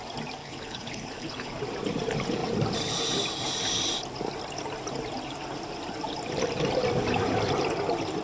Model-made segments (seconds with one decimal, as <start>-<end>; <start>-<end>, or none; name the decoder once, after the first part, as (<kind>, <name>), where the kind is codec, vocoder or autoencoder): 0.4-1.6 (codec, HILCodec)